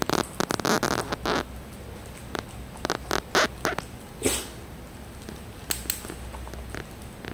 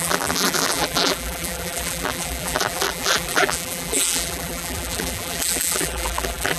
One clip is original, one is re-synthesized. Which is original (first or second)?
first